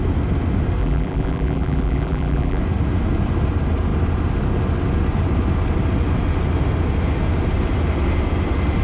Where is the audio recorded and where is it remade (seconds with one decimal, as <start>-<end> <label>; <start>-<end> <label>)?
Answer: 0.0-0.8 recorded; 0.8-2.6 remade; 2.6-8.8 recorded